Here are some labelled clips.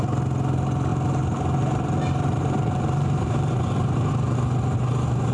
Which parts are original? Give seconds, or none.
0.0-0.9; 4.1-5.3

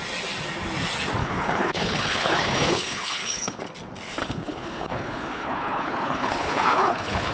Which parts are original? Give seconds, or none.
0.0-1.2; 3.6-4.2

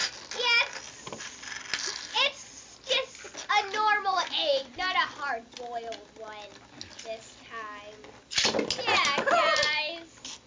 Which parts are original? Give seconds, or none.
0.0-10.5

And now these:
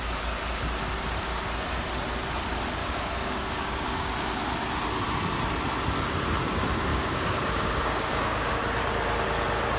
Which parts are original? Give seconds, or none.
0.0-2.8; 4.1-6.9; 8.5-9.8